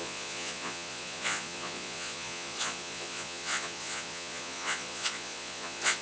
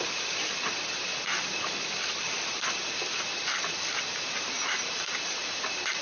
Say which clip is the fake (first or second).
first